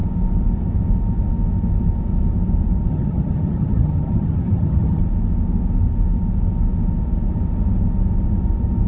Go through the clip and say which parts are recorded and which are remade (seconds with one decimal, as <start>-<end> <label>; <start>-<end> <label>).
0.0-2.9 recorded; 2.9-5.0 remade; 5.0-8.9 recorded